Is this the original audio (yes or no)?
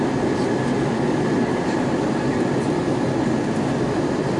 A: yes